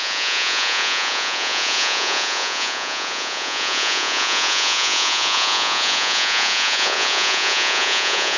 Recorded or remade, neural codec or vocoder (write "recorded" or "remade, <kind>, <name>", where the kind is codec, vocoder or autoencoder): remade, vocoder, Vocos